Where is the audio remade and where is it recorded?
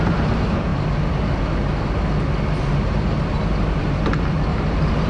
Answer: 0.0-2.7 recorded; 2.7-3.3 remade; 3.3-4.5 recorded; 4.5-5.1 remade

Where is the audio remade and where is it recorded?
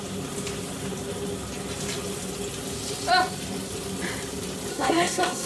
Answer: 0.0-4.7 recorded; 4.7-5.5 remade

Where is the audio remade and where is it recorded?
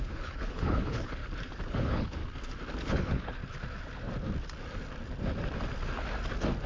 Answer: 0.0-1.2 remade; 1.2-1.7 recorded; 1.7-2.2 remade; 2.2-2.8 recorded; 2.8-3.4 remade; 3.4-6.7 recorded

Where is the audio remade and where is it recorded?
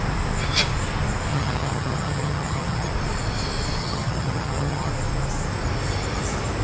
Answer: 0.0-1.3 recorded; 1.3-2.9 remade; 2.9-3.8 recorded; 3.8-4.9 remade; 4.9-6.6 recorded